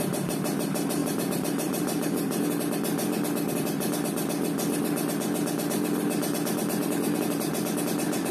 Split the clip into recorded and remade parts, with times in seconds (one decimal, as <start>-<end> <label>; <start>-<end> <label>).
0.0-1.0 recorded; 1.0-2.4 remade; 2.4-6.8 recorded; 6.8-7.5 remade; 7.5-8.3 recorded